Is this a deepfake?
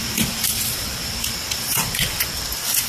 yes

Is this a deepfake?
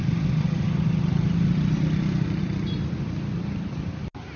no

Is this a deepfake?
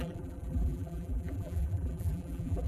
yes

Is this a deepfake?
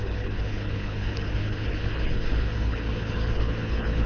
yes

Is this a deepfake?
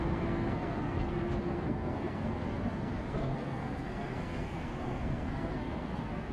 yes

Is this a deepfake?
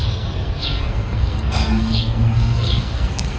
yes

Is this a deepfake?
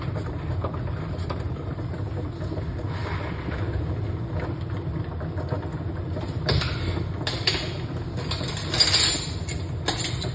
no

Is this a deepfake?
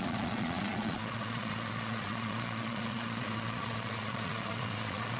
yes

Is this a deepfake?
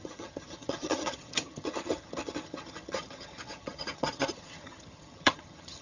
yes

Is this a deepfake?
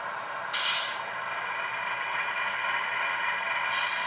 no